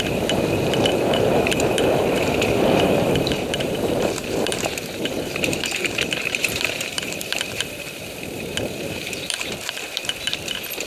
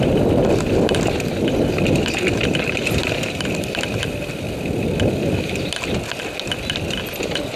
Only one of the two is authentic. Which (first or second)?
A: second